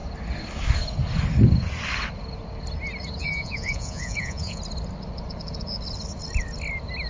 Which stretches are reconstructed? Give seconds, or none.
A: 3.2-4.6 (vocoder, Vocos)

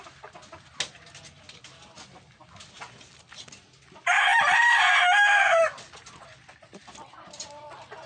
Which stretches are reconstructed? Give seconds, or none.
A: none

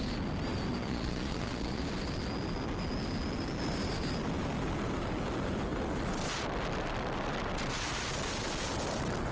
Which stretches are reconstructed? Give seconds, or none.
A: 0.8-1.8 (vocoder, Vocos)